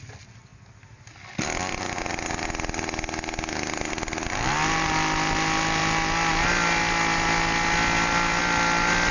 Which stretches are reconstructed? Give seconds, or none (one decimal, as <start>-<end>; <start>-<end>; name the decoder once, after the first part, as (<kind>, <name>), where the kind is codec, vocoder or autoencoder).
none